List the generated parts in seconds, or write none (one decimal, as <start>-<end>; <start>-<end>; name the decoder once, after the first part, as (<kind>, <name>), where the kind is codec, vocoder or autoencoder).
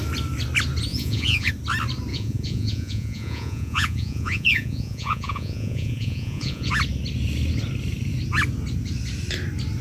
0.9-1.5 (vocoder, Vocos); 2.1-6.7